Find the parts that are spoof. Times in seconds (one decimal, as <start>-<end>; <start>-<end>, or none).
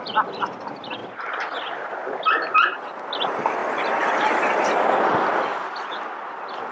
none